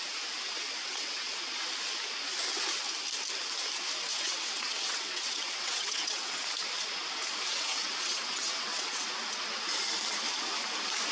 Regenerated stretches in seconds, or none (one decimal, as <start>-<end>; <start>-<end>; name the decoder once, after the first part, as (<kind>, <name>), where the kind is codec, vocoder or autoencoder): 0.8-1.3 (vocoder, WaveNeXt); 4.1-6.4; 7.5-9.0